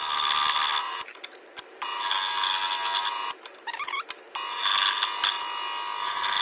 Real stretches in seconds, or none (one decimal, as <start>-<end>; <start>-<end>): 0.0-6.4